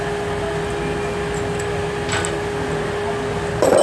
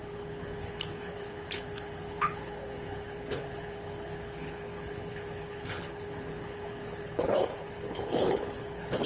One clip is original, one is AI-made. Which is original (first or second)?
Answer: first